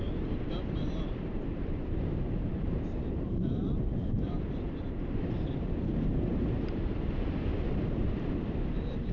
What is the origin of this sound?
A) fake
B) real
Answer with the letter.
A